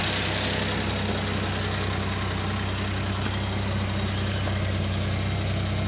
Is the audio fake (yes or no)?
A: no